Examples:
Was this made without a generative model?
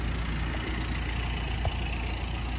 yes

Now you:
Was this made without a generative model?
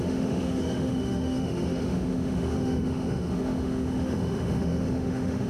no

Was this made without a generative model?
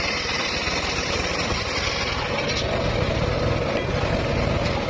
yes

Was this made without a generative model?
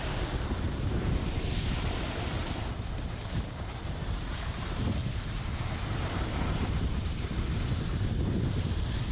no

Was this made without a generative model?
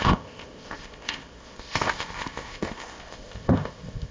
no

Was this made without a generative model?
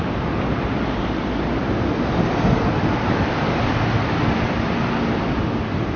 yes